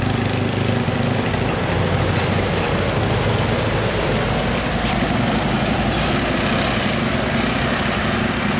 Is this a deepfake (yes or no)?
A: no